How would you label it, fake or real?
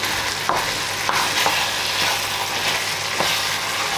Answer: real